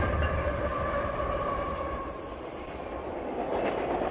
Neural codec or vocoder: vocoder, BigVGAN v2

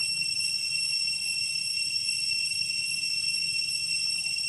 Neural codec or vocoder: none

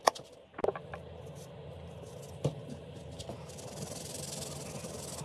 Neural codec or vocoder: none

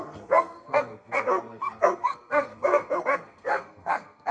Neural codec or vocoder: codec, SNAC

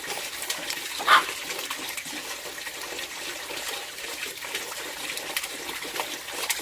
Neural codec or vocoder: none